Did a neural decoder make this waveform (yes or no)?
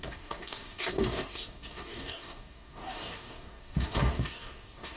yes